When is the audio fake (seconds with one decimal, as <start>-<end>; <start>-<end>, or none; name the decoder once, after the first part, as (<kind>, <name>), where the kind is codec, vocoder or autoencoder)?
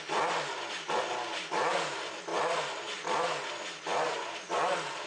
none